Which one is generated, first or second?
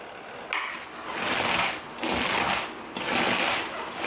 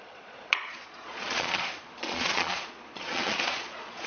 second